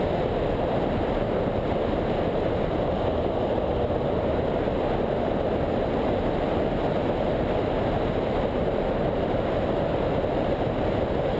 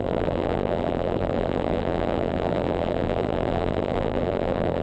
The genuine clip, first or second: first